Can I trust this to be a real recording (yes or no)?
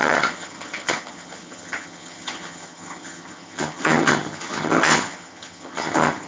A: no